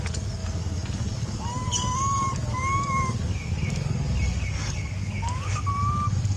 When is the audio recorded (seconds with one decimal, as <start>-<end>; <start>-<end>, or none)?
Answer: none